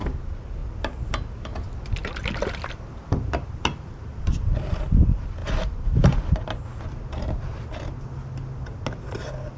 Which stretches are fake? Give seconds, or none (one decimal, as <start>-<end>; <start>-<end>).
none